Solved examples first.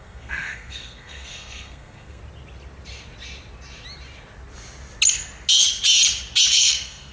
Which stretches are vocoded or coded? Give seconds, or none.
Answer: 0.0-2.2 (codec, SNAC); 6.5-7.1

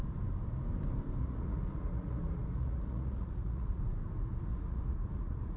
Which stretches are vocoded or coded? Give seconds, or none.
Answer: 1.2-3.8 (vocoder, Vocos); 4.5-5.6

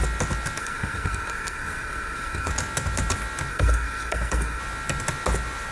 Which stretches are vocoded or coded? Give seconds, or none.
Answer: 0.6-2.5 (codec, SNAC); 3.5-4.6

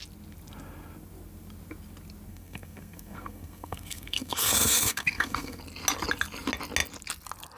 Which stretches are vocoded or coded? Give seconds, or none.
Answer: 2.3-5.6 (codec, SNAC)